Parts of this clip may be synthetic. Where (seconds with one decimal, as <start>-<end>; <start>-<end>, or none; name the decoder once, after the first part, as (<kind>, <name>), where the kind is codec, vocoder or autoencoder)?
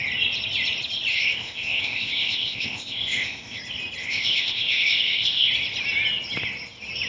1.1-3.6 (codec, ZipCodec); 4.0-5.5